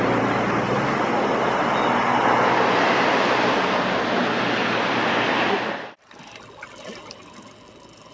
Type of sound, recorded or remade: recorded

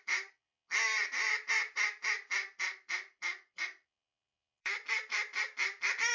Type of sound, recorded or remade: remade